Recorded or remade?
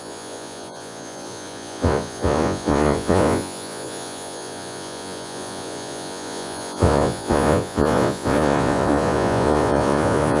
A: remade